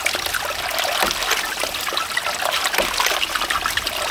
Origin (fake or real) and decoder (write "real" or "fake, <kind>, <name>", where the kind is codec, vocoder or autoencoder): real